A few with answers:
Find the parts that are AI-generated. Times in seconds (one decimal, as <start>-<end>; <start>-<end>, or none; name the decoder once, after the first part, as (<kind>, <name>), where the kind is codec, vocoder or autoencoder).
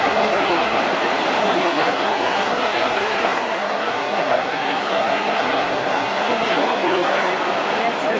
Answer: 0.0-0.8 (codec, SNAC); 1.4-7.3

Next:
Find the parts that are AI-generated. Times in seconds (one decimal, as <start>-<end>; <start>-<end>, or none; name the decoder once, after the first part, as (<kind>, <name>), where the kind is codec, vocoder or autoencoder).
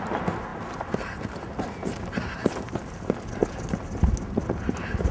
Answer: none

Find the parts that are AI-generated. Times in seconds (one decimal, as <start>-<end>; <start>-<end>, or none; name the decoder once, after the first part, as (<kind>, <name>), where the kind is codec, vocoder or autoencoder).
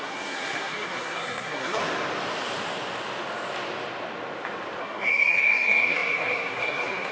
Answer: 0.0-1.8 (codec, SNAC); 4.8-7.1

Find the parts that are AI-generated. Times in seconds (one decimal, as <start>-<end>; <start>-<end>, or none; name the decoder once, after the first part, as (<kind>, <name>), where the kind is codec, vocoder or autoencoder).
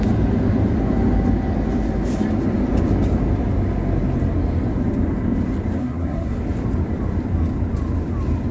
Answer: 5.8-6.4 (codec, SNAC)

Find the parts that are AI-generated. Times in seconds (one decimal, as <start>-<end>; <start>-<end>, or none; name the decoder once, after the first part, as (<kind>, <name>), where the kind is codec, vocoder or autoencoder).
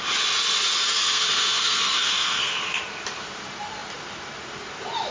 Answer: 0.9-2.6 (codec, SNAC)